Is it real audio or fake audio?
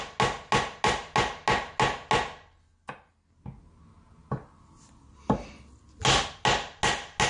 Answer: real